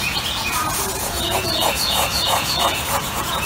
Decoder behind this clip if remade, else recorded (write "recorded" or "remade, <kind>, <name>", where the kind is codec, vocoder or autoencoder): remade, vocoder, Vocos